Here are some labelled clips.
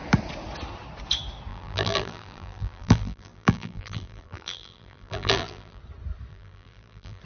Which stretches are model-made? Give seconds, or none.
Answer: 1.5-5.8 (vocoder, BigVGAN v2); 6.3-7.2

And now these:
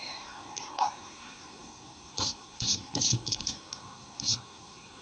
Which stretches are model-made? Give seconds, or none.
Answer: 0.0-5.0 (codec, SNAC)

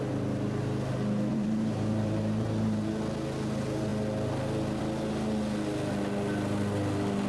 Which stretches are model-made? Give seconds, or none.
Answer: 1.3-2.9 (vocoder, BigVGAN v2)